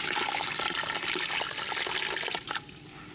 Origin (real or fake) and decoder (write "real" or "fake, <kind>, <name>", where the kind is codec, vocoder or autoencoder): real